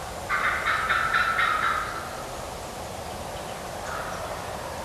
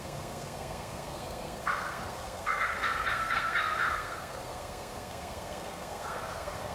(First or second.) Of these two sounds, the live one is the first